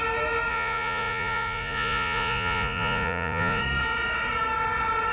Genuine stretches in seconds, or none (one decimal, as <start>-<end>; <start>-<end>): 0.0-0.5; 3.6-5.1